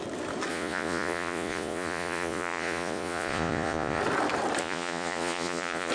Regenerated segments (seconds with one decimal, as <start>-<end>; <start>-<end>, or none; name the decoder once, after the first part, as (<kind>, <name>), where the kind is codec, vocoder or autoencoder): 0.5-4.0 (vocoder, Vocos); 4.6-5.9